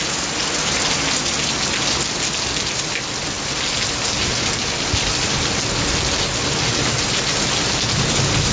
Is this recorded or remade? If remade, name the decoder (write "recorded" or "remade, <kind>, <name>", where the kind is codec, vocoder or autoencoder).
recorded